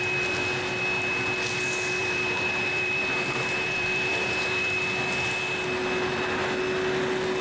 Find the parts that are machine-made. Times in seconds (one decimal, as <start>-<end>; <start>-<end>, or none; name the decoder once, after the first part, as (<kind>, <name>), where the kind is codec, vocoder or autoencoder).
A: 2.0-4.8 (vocoder, BigVGAN v2)